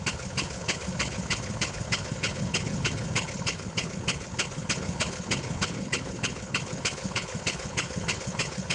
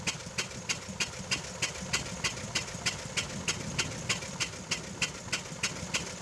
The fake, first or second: first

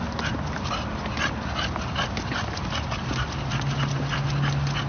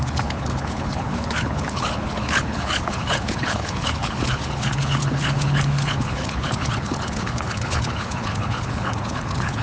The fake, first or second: second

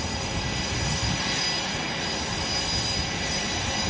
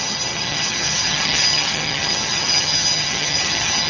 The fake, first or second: second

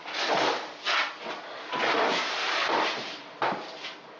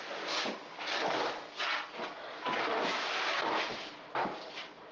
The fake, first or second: first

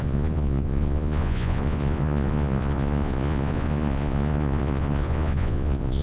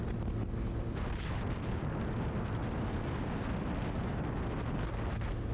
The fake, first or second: first